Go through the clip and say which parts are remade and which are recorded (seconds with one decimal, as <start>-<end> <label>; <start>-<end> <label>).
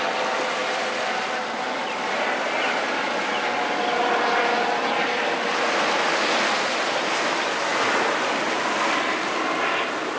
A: 0.0-10.2 recorded